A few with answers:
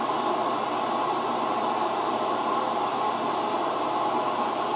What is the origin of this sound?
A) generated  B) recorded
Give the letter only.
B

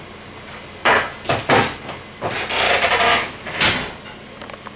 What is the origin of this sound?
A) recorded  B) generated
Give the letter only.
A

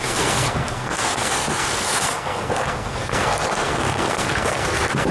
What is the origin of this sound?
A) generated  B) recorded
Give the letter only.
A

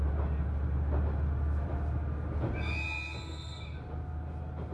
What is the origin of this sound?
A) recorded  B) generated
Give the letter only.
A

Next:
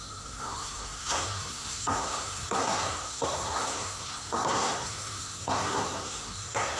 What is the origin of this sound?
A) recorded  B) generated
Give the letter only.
B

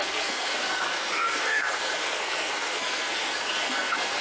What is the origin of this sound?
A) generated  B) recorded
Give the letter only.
A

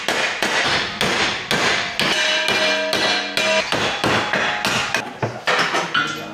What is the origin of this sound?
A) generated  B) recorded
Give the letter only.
B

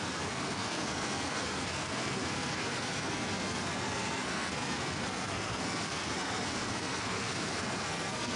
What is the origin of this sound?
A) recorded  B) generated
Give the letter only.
B